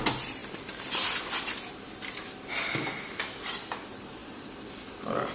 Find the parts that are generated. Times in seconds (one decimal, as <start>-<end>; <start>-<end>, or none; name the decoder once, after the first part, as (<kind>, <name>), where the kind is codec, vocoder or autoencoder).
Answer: none